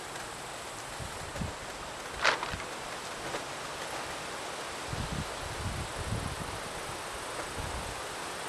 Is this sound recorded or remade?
recorded